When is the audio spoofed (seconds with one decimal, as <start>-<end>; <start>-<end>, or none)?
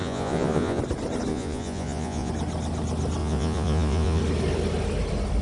0.0-0.8; 1.3-2.3; 3.2-4.2